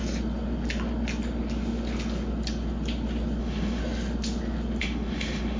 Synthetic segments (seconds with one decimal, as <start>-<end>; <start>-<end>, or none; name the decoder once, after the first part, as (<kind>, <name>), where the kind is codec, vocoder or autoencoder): 3.4-3.8 (autoencoder, DAC-VAE); 4.8-5.6

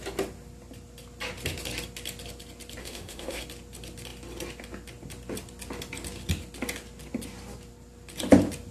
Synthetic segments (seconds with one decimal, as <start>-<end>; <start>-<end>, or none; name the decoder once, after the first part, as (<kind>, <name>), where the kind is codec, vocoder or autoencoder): 2.8-3.4 (autoencoder, DAC-VAE)

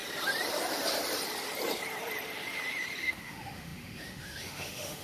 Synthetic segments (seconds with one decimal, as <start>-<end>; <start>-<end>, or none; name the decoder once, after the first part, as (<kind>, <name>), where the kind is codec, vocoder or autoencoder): 3.0-5.0 (autoencoder, DAC-VAE)